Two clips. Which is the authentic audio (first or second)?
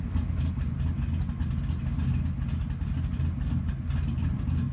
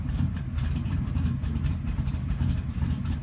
first